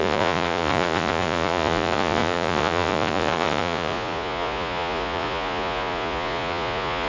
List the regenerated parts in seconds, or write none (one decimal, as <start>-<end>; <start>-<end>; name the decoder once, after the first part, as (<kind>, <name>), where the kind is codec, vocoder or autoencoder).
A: 0.0-7.1 (vocoder, Vocos)